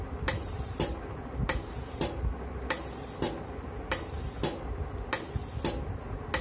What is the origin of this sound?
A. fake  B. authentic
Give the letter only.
B